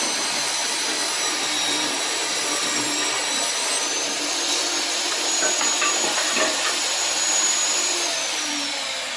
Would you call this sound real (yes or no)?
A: no